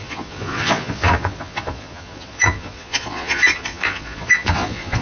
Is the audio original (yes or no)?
no